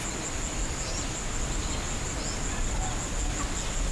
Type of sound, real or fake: real